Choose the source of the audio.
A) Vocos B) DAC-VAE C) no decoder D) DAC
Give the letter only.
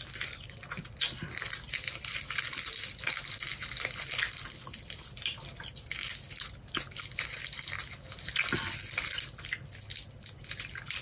C